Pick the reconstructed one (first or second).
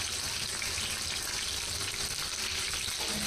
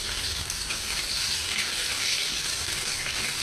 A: second